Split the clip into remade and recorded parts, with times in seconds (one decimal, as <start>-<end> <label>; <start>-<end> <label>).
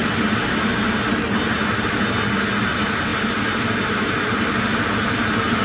0.0-5.6 recorded